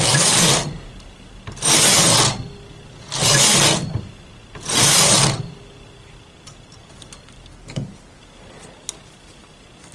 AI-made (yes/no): no